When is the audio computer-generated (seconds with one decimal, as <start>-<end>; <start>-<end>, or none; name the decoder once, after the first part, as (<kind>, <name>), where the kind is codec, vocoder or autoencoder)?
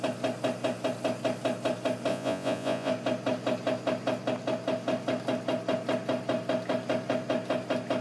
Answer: 2.1-2.9 (vocoder, Vocos)